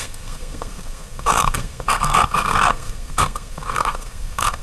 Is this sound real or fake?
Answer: fake